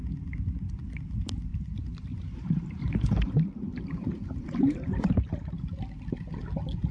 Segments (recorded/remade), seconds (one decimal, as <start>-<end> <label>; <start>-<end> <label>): 0.0-1.5 recorded; 1.5-5.6 remade; 5.6-6.9 recorded